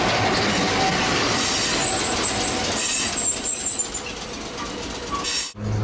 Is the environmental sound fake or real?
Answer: real